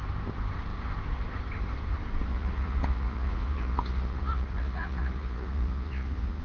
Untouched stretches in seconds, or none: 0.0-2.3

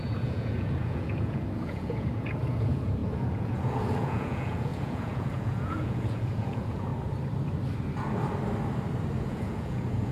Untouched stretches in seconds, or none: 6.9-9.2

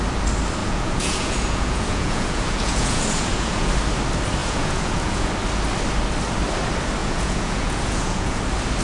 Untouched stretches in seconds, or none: 0.0-0.6; 3.7-4.4; 5.3-7.0; 8.4-8.8

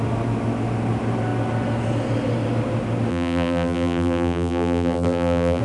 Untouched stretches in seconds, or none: 0.0-3.1